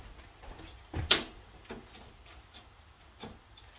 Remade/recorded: recorded